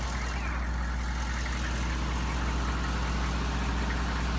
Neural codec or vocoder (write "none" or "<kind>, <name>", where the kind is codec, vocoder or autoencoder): none